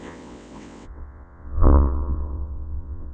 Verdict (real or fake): fake